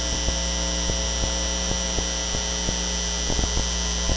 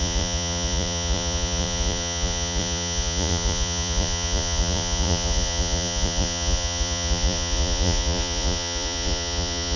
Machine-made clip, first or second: second